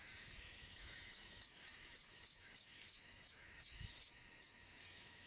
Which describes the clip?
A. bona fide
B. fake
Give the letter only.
B